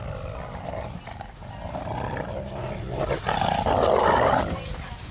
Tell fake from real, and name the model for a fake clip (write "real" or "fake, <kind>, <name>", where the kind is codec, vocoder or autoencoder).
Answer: real